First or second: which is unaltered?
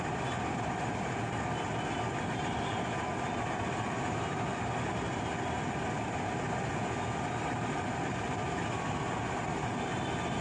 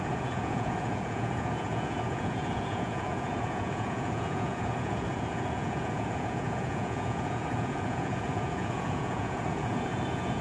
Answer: first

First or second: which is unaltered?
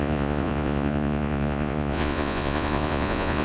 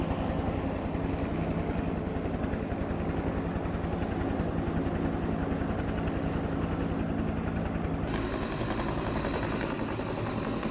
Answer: second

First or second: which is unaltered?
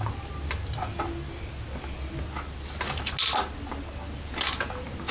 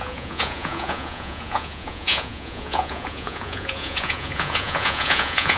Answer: first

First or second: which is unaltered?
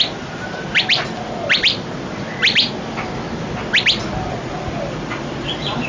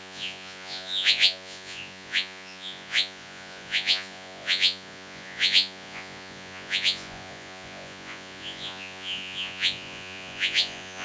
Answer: first